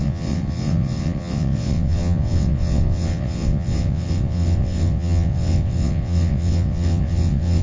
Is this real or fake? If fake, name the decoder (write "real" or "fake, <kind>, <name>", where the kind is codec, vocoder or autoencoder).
fake, vocoder, WaveNeXt